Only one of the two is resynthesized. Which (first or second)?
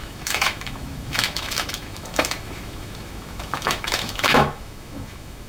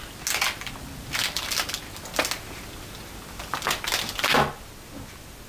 first